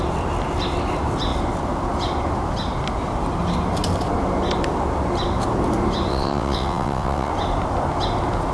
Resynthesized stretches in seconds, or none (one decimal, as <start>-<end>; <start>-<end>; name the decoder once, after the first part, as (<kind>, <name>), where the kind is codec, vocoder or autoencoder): 6.1-7.3 (vocoder, WaveNeXt)